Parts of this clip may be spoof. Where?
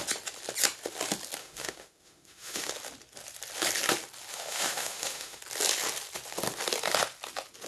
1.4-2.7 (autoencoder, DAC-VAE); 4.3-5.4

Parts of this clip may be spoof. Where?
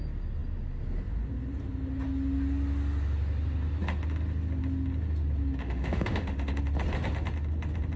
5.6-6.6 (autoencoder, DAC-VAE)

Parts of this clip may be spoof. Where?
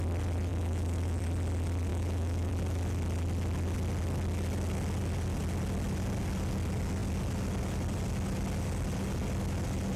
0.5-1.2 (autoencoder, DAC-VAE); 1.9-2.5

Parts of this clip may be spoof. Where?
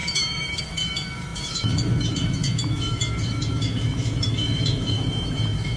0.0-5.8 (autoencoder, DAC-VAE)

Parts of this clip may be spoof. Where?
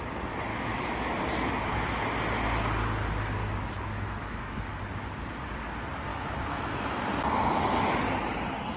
0.5-1.2 (autoencoder, DAC-VAE); 3.4-4.8; 6.1-6.9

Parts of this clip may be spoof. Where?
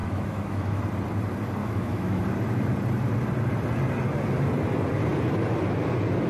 0.0-0.8 (autoencoder, DAC-VAE); 1.6-2.2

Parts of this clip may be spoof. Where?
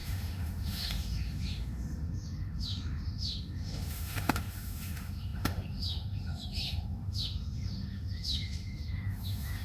0.0-9.6 (autoencoder, DAC-VAE)